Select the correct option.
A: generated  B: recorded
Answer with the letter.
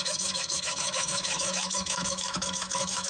A